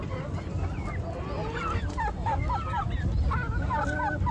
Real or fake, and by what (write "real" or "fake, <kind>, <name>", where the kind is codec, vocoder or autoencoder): real